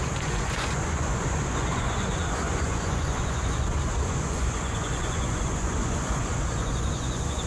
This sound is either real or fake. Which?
fake